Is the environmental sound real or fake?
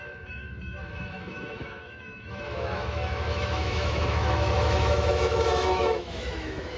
fake